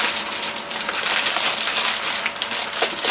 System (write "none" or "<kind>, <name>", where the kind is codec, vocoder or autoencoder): none